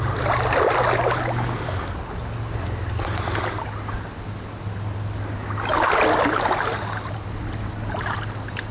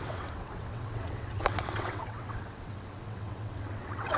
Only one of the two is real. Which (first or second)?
first